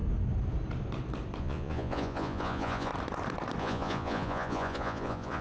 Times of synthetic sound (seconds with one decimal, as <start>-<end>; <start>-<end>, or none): 1.4-2.9; 3.6-5.4